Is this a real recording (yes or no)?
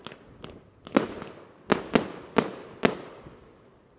yes